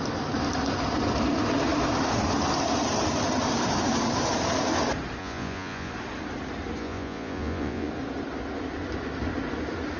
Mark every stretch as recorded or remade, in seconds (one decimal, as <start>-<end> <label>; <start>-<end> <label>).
0.0-5.2 recorded; 5.2-5.9 remade; 5.9-6.8 recorded; 6.8-7.9 remade; 7.9-10.0 recorded